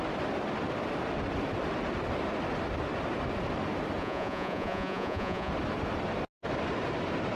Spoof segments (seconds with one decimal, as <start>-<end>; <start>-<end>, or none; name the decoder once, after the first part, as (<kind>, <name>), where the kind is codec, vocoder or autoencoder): 4.0-5.5 (vocoder, Vocos)